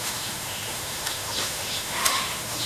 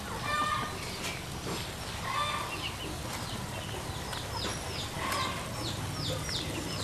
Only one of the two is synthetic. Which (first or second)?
first